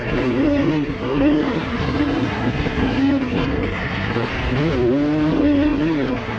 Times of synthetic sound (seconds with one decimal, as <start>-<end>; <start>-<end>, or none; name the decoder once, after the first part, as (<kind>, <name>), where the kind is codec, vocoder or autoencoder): 0.0-4.3 (codec, SNAC); 5.3-6.4